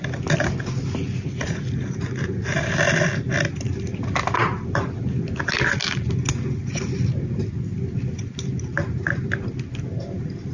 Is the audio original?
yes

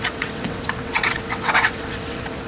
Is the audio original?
no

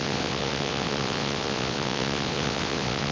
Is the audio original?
no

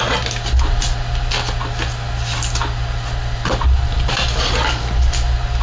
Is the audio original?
yes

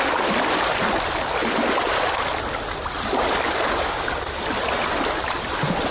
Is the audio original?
yes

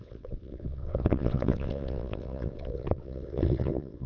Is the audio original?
no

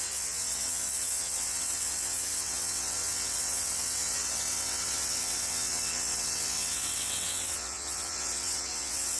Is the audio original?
no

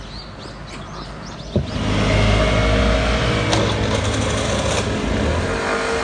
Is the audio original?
yes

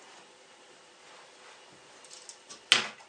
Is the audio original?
yes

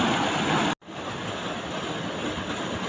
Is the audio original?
yes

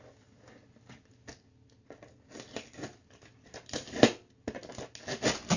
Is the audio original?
yes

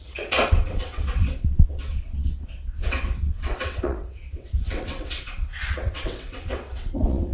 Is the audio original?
no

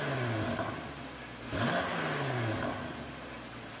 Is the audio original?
yes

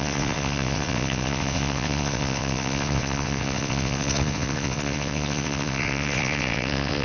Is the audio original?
no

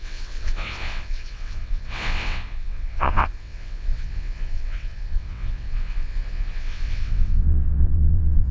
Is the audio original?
no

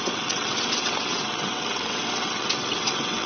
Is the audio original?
no